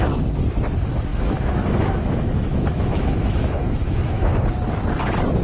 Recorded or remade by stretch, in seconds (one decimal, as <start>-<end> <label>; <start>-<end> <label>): 0.0-1.1 recorded; 1.1-4.3 remade; 4.3-5.4 recorded